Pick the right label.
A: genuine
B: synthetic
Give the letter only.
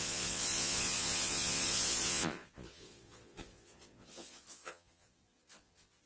B